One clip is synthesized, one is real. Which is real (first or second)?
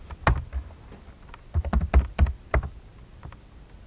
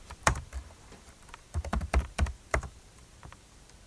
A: first